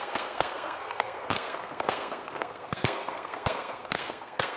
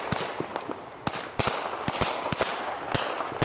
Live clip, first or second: second